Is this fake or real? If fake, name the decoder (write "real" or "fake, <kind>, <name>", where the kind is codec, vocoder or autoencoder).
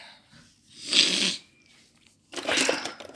real